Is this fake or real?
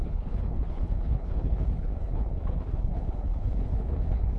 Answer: fake